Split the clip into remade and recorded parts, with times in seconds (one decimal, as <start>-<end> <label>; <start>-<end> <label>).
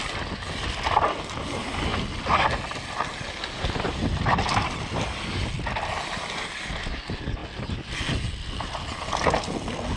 0.0-10.0 recorded